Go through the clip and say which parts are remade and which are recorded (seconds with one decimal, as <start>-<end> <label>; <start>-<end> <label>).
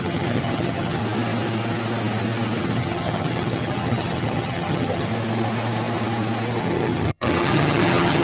0.0-1.0 remade; 1.0-2.6 recorded; 2.6-5.1 remade; 5.1-6.6 recorded; 6.6-8.2 remade